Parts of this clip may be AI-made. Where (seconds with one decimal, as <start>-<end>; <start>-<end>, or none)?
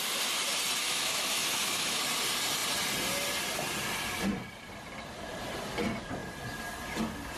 0.8-2.0